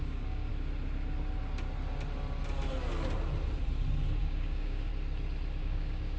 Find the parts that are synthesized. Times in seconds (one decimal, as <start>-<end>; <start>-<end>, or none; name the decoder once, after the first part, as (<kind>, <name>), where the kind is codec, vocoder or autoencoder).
0.0-0.5 (codec, DAC); 4.2-4.9; 5.6-6.2